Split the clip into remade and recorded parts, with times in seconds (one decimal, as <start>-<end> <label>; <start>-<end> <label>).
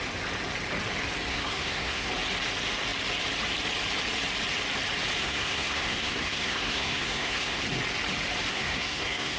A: 0.0-1.3 recorded; 1.3-2.1 remade; 2.1-5.2 recorded; 5.2-7.6 remade; 7.6-8.5 recorded; 8.5-9.4 remade